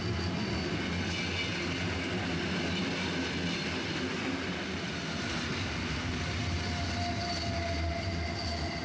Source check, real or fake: real